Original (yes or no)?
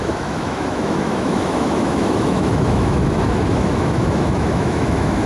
no